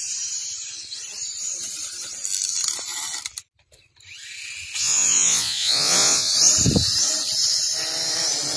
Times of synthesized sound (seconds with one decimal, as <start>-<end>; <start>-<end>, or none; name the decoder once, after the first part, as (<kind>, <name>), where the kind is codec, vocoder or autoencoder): 4.8-6.3 (vocoder, Vocos)